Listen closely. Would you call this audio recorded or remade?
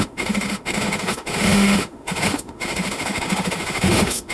remade